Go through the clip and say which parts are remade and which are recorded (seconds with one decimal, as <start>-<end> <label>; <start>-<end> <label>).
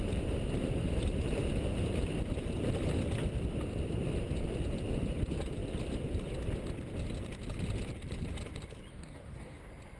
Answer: 0.0-8.9 recorded; 8.9-9.6 remade; 9.6-10.0 recorded